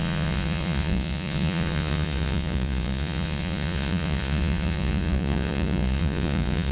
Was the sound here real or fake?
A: fake